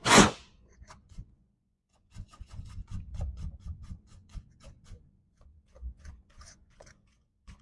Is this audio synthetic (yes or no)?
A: yes